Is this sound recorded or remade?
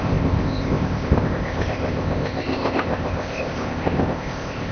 remade